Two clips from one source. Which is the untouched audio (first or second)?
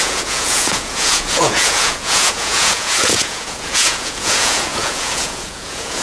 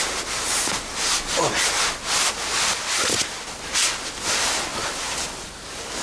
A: second